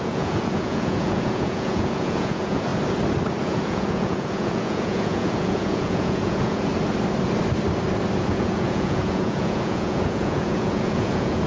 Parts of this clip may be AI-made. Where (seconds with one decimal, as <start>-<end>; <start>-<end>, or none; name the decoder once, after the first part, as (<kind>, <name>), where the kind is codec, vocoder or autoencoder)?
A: 0.0-2.7 (vocoder, Vocos); 3.4-6.7; 8.2-11.5